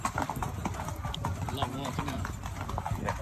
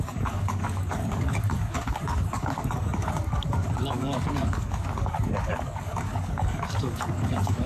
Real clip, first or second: first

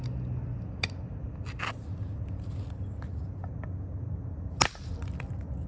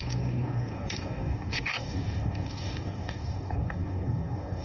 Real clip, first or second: first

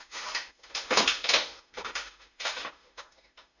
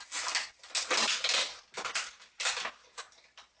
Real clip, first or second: second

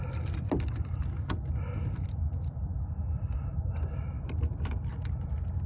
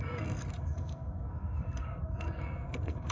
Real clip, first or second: first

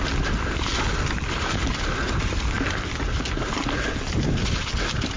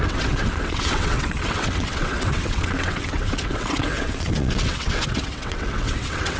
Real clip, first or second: first